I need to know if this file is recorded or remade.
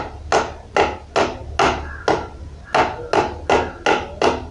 recorded